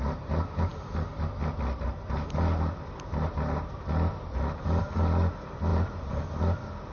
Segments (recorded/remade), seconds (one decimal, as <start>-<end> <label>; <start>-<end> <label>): 0.0-5.7 recorded; 5.7-6.2 remade; 6.2-6.9 recorded